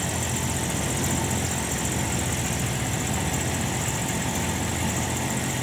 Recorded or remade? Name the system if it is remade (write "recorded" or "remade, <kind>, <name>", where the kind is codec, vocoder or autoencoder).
recorded